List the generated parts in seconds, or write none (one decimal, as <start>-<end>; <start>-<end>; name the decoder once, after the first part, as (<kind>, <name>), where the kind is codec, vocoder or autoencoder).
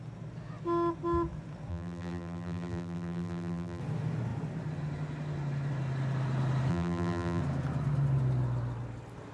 1.7-3.8 (vocoder, BigVGAN v2); 6.7-7.4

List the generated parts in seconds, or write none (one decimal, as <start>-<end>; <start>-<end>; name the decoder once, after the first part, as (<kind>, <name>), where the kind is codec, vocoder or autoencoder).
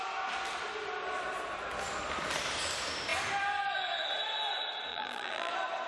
4.9-5.5 (vocoder, BigVGAN v2)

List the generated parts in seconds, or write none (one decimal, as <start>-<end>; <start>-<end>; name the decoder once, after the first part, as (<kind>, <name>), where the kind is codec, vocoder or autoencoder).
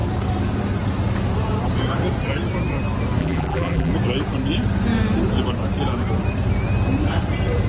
3.2-3.9 (vocoder, BigVGAN v2)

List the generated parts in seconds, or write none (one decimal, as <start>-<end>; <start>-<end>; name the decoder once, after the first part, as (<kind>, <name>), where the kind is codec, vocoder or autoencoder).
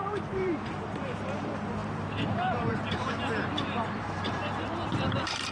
0.0-5.5 (vocoder, BigVGAN v2)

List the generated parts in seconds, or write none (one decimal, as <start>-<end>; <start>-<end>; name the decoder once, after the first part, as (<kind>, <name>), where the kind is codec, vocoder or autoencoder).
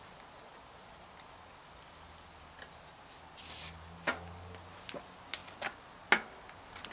none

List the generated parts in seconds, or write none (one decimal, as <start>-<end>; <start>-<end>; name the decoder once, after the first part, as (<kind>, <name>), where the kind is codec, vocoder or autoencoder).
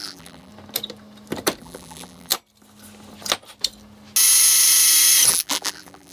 0.0-0.5 (vocoder, BigVGAN v2); 1.6-2.3; 5.3-6.1